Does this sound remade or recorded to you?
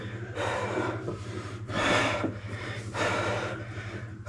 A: remade